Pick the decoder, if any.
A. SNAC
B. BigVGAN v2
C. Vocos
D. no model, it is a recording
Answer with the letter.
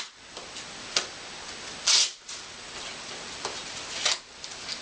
D